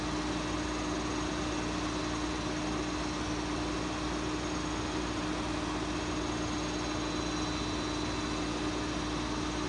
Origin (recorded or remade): recorded